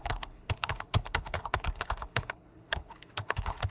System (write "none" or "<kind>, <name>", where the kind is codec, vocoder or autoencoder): codec, HILCodec